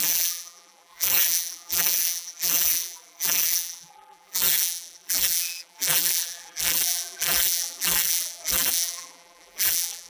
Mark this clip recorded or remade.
remade